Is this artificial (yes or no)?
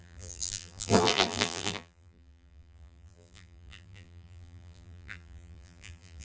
yes